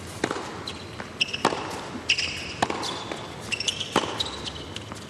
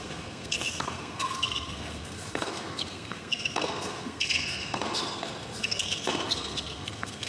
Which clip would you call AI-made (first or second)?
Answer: second